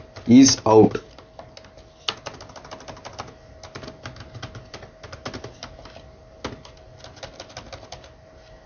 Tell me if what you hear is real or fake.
real